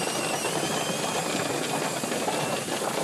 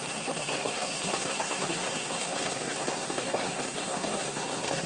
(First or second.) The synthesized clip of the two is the second